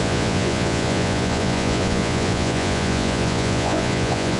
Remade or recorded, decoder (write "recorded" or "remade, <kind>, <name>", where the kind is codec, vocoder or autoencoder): remade, vocoder, Vocos